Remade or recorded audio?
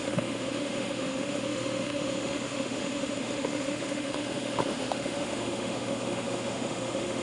remade